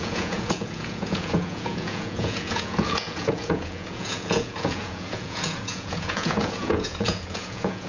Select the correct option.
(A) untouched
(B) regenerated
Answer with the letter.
B